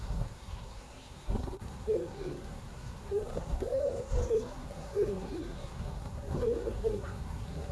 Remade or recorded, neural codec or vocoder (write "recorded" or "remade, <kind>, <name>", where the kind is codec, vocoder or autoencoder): remade, codec, SNAC